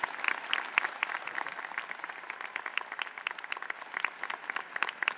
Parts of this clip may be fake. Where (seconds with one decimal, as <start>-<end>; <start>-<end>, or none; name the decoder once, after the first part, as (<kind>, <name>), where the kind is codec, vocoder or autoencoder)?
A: none